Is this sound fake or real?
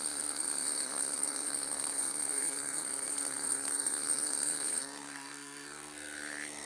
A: fake